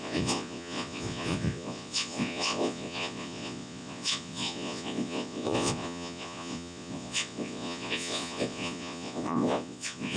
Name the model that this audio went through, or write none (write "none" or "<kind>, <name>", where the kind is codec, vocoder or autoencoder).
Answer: vocoder, Vocos